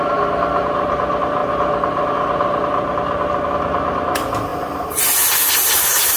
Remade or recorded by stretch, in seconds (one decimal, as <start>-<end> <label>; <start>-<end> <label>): 0.0-6.2 recorded